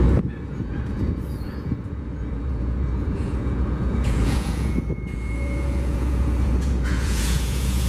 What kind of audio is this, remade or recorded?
remade